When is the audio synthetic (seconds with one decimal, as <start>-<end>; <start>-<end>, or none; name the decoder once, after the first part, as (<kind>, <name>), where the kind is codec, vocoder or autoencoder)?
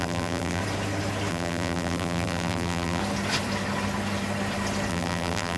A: 0.0-0.6 (vocoder, BigVGAN v2); 1.3-3.0; 4.9-5.6